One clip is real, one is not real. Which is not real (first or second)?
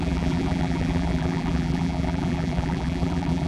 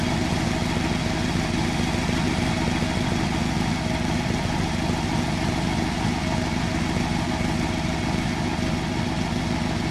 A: first